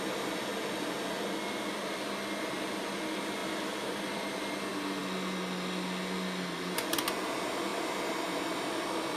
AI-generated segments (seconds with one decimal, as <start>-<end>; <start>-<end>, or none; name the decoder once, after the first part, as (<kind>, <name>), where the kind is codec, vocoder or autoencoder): 3.4-4.5 (vocoder, BigVGAN v2); 7.7-8.5